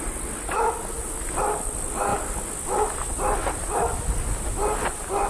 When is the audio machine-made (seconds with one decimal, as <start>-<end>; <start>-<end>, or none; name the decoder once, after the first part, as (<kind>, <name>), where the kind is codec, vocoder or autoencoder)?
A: none